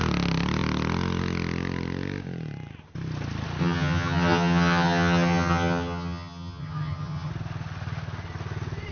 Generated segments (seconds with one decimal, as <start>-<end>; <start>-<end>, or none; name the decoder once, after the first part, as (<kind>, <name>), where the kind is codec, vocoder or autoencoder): 3.6-7.3 (vocoder, HiFi-GAN)